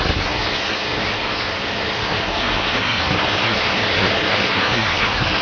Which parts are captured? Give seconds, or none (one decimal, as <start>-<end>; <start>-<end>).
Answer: none